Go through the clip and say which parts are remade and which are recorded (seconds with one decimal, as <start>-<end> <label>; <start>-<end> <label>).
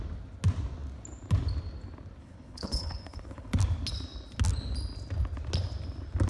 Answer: 0.0-2.2 recorded; 2.2-3.5 remade; 3.5-6.3 recorded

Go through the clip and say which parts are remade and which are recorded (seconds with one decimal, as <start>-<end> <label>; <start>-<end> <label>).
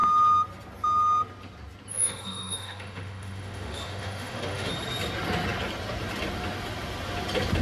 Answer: 0.0-1.9 recorded; 1.9-4.7 remade; 4.7-7.6 recorded